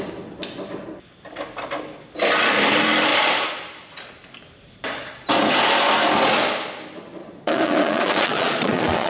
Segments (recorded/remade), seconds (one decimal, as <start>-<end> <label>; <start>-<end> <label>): 0.0-7.2 recorded; 7.2-9.1 remade